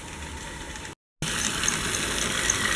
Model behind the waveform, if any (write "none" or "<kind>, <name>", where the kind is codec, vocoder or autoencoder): none